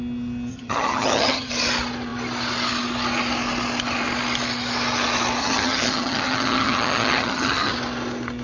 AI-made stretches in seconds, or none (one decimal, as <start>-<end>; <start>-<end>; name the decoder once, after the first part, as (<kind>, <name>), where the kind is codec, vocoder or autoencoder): 0.5-1.5 (vocoder, HiFi-GAN); 5.4-7.7